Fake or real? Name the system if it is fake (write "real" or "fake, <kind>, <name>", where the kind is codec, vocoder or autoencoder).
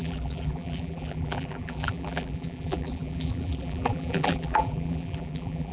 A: fake, vocoder, BigVGAN v2